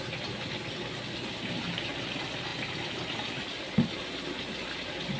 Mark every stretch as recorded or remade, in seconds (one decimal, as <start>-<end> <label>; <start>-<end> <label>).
0.0-1.3 recorded; 1.3-1.9 remade; 1.9-2.5 recorded; 2.5-3.6 remade; 3.6-5.2 recorded